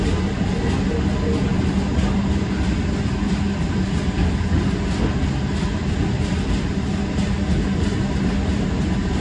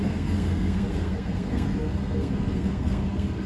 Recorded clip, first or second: first